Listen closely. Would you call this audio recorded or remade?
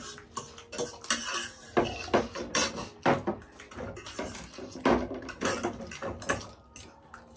recorded